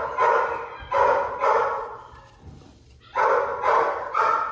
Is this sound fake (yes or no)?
no